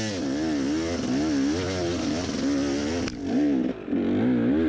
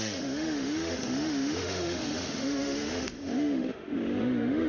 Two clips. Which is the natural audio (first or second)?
first